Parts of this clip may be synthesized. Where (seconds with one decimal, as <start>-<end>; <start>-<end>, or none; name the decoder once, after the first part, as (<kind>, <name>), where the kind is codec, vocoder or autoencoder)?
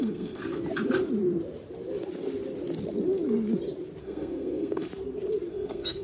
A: 0.0-0.4 (codec, SNAC); 4.0-4.9; 5.5-6.0